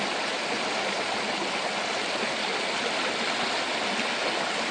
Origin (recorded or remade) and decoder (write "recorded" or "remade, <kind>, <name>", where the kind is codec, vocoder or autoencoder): recorded